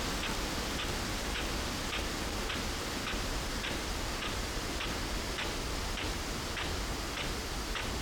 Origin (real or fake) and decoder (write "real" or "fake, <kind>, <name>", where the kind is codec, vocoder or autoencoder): real